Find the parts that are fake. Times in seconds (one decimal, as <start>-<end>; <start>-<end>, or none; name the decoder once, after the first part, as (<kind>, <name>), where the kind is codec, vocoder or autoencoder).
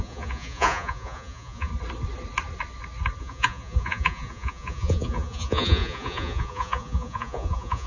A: 0.0-1.7 (vocoder, Vocos); 3.2-7.9